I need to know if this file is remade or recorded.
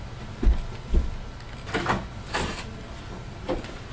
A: recorded